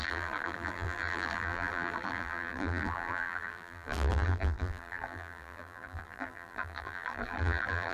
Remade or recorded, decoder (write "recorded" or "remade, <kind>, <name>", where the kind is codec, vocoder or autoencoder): remade, vocoder, BigVGAN v2